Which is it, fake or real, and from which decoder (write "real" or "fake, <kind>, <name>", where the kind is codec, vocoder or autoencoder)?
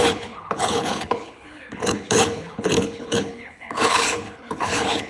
fake, codec, HILCodec